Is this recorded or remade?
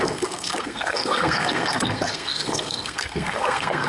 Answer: remade